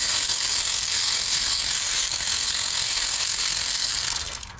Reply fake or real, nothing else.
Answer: fake